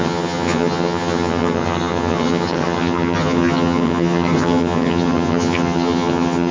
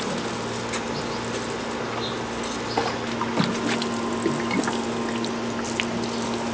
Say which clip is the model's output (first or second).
first